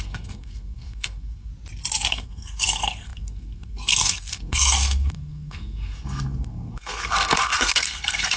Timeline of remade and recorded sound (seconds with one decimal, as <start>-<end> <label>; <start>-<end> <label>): 0.0-1.5 remade; 1.5-2.1 recorded; 2.1-8.4 remade